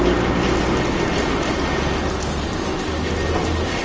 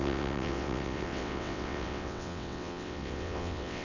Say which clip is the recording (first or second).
first